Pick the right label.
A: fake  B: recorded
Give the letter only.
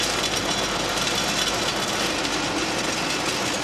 B